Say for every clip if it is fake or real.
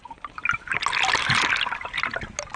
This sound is real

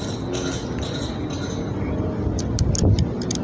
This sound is real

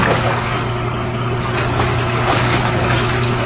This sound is fake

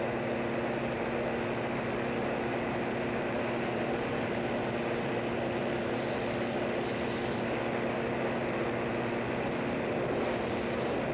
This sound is real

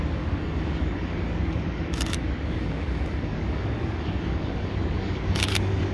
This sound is fake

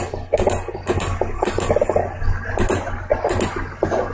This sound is real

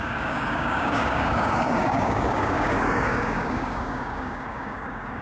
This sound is fake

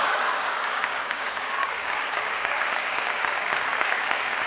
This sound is fake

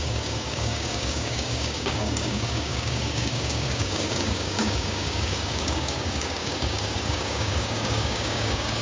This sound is fake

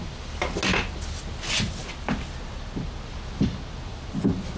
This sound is real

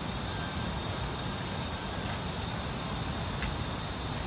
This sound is real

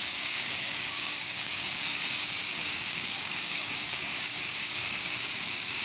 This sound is fake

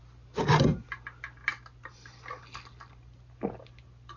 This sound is real